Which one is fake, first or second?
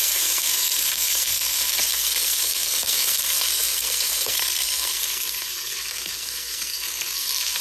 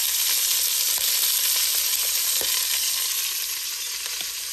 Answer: first